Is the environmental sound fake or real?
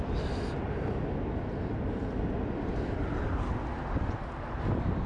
real